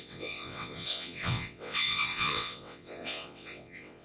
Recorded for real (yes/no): no